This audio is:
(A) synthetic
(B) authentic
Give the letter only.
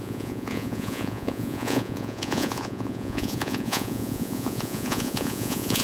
A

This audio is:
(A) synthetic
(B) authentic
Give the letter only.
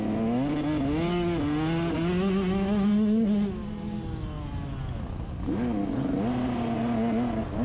B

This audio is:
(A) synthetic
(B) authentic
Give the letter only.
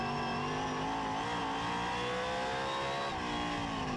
B